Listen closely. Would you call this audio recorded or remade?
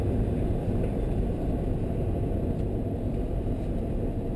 recorded